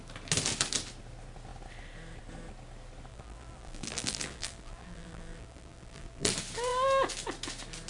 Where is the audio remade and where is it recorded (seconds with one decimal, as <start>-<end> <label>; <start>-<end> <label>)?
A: 0.0-3.1 recorded; 3.1-6.3 remade; 6.3-7.9 recorded